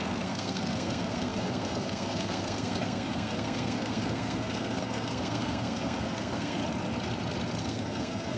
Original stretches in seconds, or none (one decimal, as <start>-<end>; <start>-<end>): 6.6-7.6